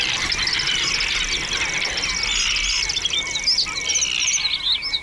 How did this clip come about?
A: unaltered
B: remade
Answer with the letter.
A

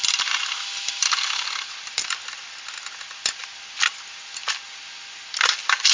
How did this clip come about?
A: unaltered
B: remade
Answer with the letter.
A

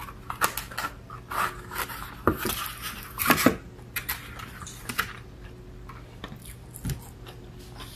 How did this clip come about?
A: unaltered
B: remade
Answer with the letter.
A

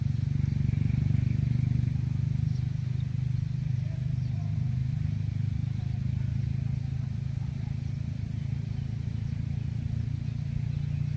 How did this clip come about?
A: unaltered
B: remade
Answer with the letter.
A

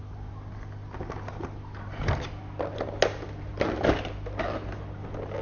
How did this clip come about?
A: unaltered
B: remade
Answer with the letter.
A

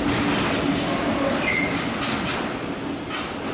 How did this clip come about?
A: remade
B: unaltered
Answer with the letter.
B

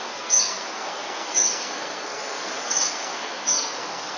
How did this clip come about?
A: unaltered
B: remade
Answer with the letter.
B